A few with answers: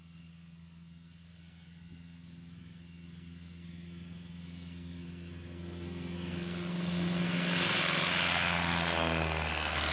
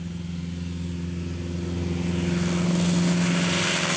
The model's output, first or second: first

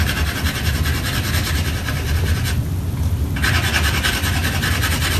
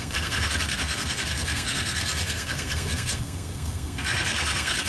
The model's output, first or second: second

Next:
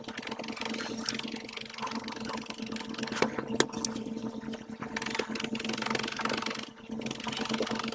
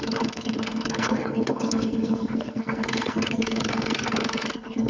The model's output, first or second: second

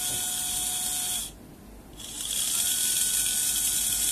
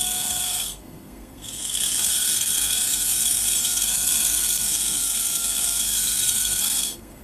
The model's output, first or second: second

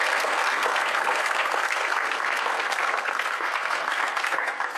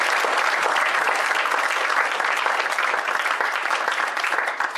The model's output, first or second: first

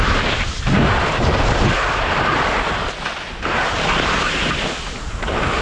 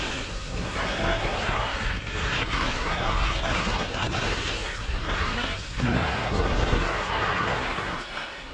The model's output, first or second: second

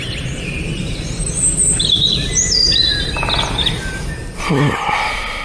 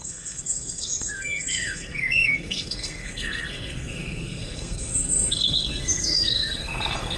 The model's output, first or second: second